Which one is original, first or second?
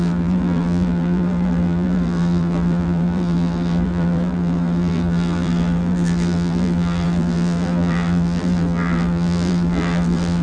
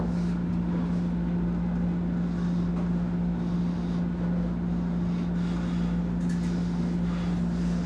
second